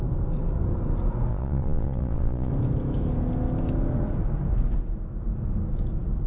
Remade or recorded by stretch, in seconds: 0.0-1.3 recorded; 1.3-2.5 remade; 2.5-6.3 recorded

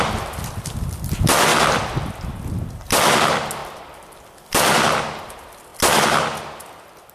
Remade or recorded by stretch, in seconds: 0.0-7.1 recorded